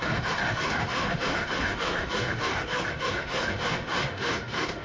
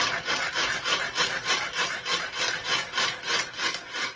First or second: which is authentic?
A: second